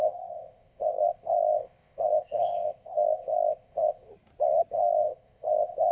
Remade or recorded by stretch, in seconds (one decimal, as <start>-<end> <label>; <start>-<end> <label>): 0.0-4.1 remade; 4.1-4.7 recorded; 4.7-5.9 remade